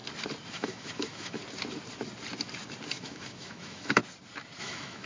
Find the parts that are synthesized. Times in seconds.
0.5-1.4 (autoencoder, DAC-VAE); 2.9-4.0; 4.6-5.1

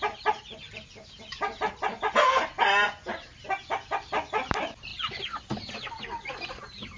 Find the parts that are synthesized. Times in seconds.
none

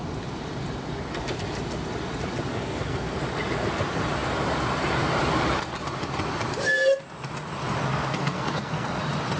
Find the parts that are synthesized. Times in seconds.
2.5-3.2 (codec, SNAC); 7.8-9.0

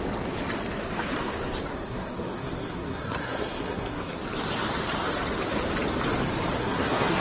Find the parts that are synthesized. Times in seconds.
1.7-4.2 (codec, SNAC); 6.6-7.2

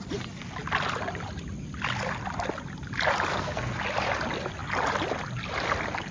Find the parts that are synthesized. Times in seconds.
3.3-3.8 (codec, SNAC)

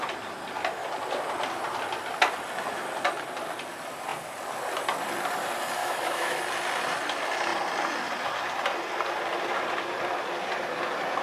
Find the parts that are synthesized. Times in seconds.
5.8-6.4 (autoencoder, DAC-VAE)

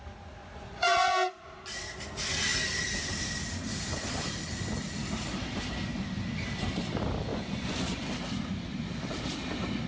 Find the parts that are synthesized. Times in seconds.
0.4-1.5 (vocoder, Vocos); 7.3-8.1

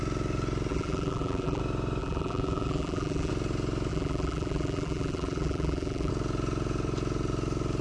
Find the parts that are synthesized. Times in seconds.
0.7-1.6 (vocoder, BigVGAN v2); 2.0-3.3; 3.9-6.1